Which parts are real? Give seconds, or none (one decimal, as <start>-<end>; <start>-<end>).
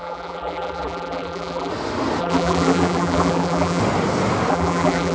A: 1.7-2.2; 3.8-4.5